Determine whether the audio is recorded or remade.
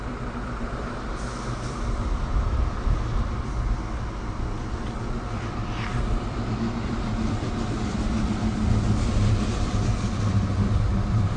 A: recorded